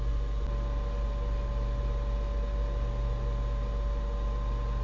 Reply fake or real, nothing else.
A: real